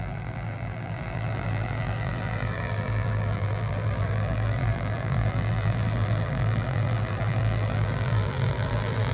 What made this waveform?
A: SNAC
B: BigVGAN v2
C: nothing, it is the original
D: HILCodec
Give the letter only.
B